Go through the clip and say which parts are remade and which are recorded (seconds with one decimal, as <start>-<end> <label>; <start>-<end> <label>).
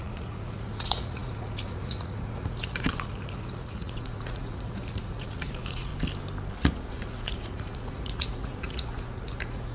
0.0-5.9 remade; 5.9-6.6 recorded; 6.6-9.7 remade